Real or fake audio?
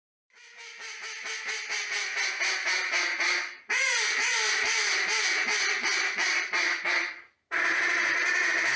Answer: real